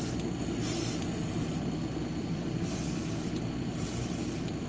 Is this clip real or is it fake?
real